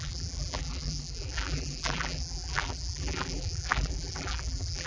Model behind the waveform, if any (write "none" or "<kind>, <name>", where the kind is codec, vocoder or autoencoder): vocoder, BigVGAN v2